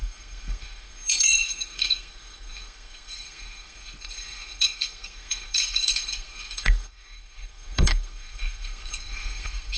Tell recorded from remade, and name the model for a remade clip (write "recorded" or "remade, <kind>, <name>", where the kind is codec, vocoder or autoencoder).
remade, codec, SNAC